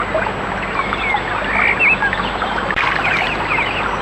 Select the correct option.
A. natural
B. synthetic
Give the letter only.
A